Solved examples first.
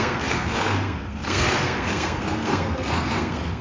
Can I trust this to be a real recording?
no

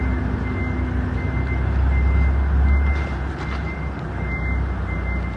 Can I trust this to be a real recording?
yes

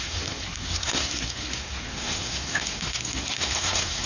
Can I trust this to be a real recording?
no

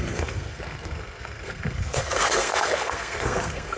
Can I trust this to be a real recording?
no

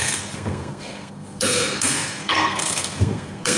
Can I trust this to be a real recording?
no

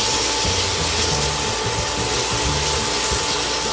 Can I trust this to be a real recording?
yes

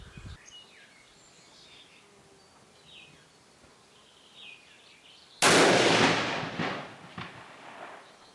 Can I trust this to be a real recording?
yes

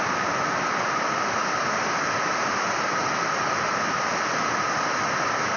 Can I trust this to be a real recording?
yes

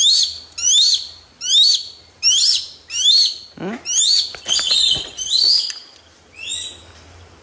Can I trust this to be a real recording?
yes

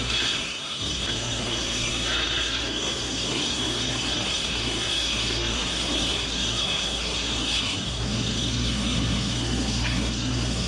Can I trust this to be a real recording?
no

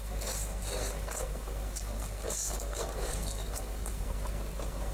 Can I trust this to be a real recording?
no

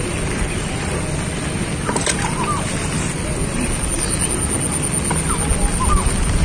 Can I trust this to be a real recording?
yes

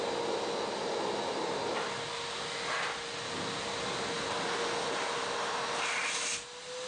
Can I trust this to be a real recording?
yes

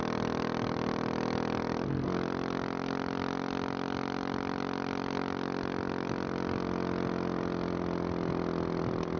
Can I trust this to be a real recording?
yes